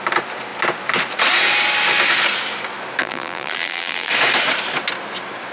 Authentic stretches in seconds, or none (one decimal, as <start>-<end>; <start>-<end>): 0.0-3.0; 4.1-5.5